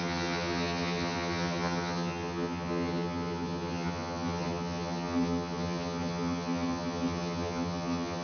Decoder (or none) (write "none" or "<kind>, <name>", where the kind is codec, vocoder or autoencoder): vocoder, HiFi-GAN